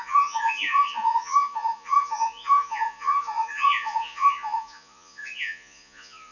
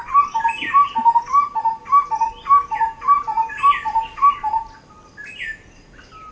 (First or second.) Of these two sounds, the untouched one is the second